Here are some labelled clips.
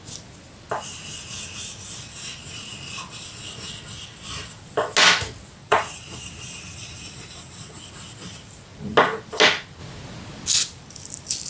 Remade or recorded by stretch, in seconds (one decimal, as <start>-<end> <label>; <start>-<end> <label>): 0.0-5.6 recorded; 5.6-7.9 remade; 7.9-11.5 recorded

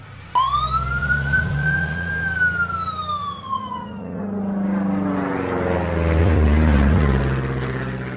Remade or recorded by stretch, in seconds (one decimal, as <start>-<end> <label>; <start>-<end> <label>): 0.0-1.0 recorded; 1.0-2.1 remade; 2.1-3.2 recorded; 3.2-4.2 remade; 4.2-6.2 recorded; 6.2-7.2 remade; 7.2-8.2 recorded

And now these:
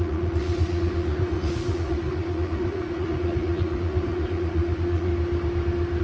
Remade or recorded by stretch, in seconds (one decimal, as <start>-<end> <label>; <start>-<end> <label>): 0.0-5.1 remade; 5.1-6.0 recorded

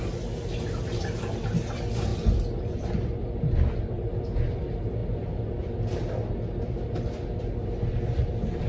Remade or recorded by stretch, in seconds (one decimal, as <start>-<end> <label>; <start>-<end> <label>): 0.0-8.7 recorded